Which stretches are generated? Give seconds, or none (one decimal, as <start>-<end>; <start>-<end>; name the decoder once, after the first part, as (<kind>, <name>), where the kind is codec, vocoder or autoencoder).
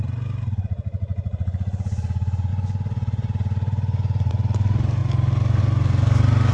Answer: 2.5-4.3 (vocoder, Vocos)